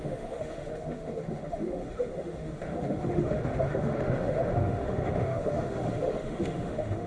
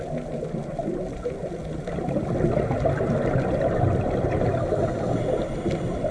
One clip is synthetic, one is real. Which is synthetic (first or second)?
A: first